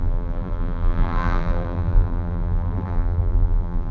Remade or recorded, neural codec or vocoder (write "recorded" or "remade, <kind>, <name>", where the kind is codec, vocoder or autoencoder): remade, vocoder, BigVGAN v2